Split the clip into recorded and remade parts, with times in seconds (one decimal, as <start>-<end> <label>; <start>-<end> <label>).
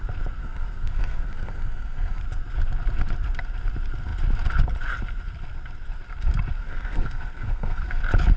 0.0-0.4 recorded; 0.4-2.2 remade; 2.2-6.6 recorded; 6.6-8.0 remade; 8.0-8.4 recorded